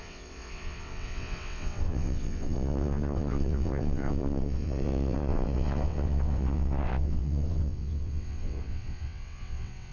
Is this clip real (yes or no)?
no